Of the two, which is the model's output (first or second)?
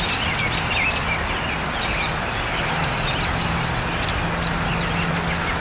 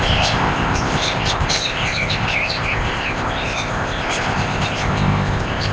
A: second